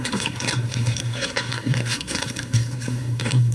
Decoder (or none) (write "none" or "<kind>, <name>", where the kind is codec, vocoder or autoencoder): codec, SNAC